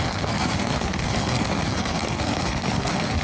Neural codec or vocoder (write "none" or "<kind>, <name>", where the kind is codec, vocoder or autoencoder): codec, SNAC